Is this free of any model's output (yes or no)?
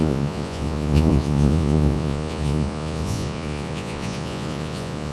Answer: no